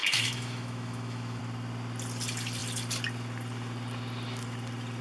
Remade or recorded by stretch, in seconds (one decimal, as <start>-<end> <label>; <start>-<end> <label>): 0.0-1.4 remade; 1.4-5.0 recorded